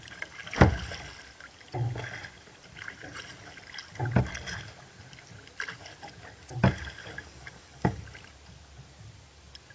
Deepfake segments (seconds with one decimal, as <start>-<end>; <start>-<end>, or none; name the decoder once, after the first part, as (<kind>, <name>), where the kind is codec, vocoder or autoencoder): 7.0-8.0 (codec, DAC)